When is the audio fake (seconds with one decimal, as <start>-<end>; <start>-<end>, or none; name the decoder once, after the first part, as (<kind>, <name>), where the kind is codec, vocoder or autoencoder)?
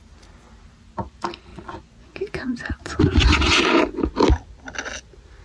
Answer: 1.5-4.1 (vocoder, Vocos)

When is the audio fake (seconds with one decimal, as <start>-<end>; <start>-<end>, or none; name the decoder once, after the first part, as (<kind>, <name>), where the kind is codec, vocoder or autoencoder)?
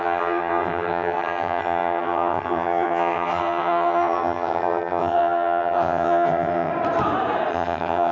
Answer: 0.0-6.7 (vocoder, HiFi-GAN); 7.5-8.1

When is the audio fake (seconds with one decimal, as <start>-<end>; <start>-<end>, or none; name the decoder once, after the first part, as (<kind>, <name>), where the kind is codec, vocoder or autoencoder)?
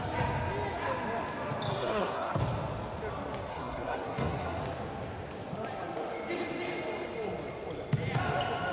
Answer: 1.7-2.4 (codec, SNAC); 3.5-4.6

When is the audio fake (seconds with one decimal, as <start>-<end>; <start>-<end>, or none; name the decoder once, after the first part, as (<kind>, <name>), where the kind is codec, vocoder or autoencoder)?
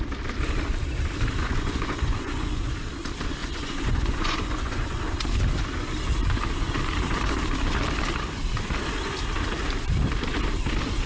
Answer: 1.4-2.7 (vocoder, Vocos); 3.4-5.0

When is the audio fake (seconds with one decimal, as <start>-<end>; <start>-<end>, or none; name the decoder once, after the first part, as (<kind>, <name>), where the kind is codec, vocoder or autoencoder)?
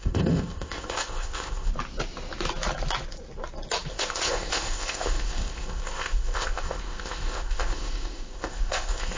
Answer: 0.0-1.7 (codec, ZipCodec); 3.9-9.2